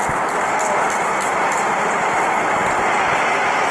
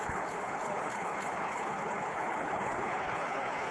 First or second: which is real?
first